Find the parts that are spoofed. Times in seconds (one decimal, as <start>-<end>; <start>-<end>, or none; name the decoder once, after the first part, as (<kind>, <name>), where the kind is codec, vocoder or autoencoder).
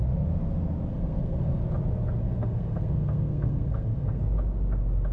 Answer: 0.9-1.6 (codec, SNAC); 2.2-4.2